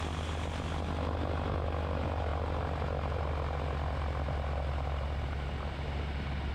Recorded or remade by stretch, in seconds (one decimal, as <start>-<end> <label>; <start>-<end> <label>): 0.0-6.5 recorded